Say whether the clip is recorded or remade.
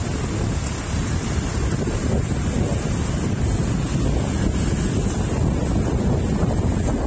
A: recorded